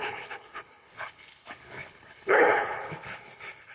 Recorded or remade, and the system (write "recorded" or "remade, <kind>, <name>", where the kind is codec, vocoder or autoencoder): remade, codec, HILCodec